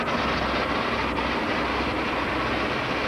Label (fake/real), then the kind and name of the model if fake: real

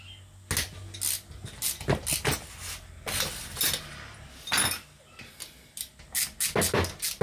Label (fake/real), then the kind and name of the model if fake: real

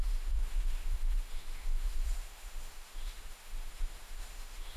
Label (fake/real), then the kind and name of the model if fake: fake, autoencoder, DAC-VAE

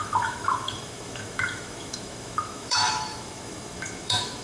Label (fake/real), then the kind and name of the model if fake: fake, autoencoder, DAC-VAE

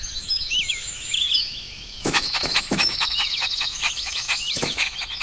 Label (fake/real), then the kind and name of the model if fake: fake, autoencoder, DAC-VAE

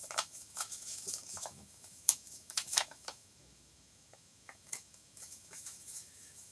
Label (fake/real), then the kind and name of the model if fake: fake, autoencoder, DAC-VAE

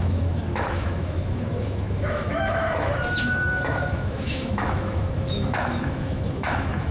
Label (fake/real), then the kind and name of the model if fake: fake, autoencoder, DAC-VAE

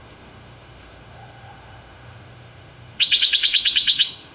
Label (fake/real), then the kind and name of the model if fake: fake, autoencoder, DAC-VAE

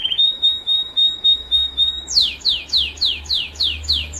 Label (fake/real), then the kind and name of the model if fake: fake, autoencoder, DAC-VAE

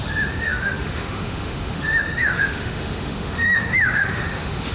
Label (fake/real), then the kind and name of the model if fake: fake, autoencoder, DAC-VAE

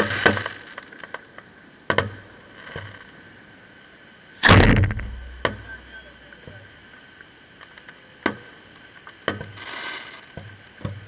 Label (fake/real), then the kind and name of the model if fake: real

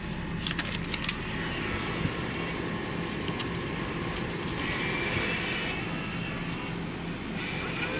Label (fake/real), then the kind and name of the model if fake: real